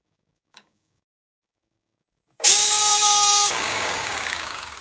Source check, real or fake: fake